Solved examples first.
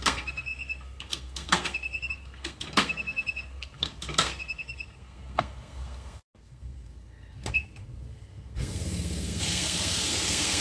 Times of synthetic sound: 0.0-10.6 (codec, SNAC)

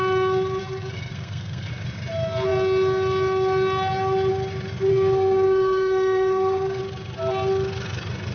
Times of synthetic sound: 0.6-1.7 (codec, SNAC); 4.9-6.8

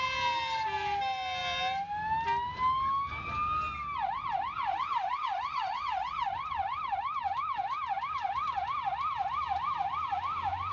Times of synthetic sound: none

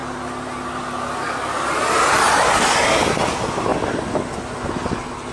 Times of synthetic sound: none